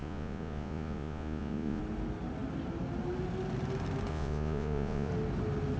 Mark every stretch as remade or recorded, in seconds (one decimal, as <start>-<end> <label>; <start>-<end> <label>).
0.0-1.8 remade; 1.8-4.1 recorded; 4.1-5.1 remade; 5.1-5.8 recorded